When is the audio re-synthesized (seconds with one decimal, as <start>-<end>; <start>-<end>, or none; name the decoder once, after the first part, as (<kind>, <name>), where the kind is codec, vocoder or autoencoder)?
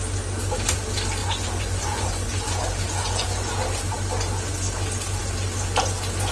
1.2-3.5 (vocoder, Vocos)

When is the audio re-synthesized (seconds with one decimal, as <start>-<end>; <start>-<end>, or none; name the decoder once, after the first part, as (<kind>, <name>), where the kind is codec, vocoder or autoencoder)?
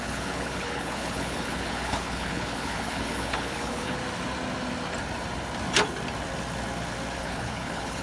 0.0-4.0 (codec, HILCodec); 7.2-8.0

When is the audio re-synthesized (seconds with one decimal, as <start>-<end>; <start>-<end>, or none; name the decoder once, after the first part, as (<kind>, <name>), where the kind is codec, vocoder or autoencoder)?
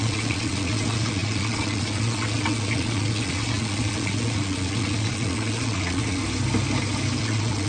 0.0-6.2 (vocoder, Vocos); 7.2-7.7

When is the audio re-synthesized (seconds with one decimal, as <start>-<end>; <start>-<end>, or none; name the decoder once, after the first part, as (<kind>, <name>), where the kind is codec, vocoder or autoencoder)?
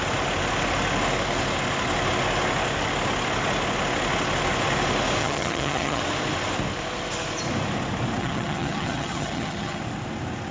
5.2-6.0 (vocoder, HiFi-GAN); 8.2-9.8